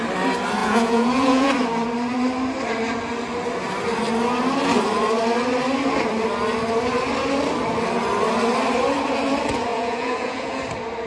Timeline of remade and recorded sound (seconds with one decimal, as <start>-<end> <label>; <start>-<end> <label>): 0.0-0.6 recorded; 0.6-1.5 remade; 1.5-9.7 recorded; 9.7-10.6 remade; 10.6-11.1 recorded